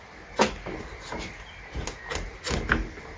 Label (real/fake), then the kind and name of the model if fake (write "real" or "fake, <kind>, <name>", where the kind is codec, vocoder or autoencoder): real